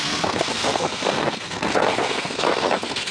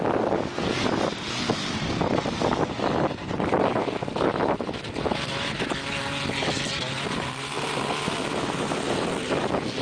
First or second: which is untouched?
second